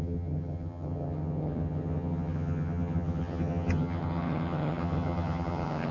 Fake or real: fake